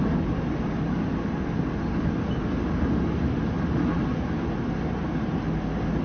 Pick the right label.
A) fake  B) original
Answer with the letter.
B